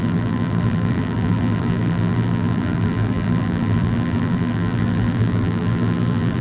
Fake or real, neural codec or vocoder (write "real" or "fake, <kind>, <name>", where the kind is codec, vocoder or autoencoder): fake, vocoder, BigVGAN v2